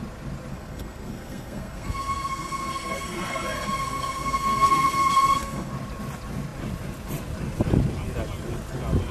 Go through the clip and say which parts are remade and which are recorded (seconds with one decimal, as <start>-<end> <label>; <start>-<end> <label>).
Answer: 0.0-0.5 recorded; 0.5-5.7 remade; 5.7-9.1 recorded